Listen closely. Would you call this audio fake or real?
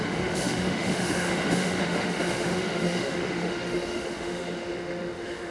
fake